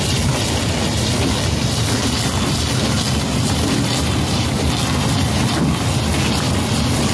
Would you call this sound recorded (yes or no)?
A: yes